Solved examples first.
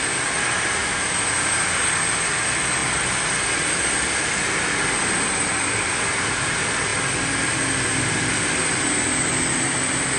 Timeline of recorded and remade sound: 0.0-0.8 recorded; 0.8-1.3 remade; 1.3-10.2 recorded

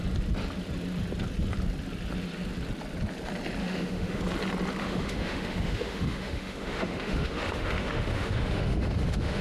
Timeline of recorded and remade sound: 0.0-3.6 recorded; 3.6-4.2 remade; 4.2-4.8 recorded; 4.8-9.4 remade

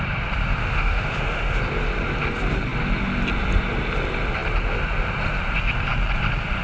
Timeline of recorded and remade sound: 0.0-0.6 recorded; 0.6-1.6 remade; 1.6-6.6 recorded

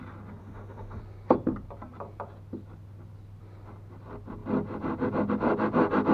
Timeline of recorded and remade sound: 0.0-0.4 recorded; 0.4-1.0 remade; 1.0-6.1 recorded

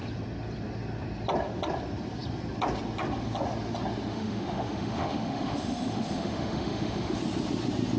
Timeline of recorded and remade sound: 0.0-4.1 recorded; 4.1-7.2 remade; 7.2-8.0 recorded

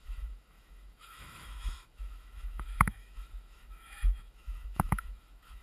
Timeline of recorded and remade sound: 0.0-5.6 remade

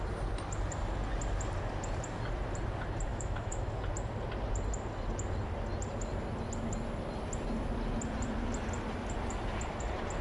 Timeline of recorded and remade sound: 0.0-3.1 recorded; 3.1-3.7 remade; 3.7-10.2 recorded

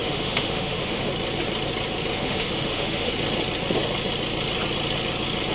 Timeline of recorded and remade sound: 0.0-1.1 remade; 1.1-2.1 recorded; 2.1-3.1 remade; 3.1-5.5 recorded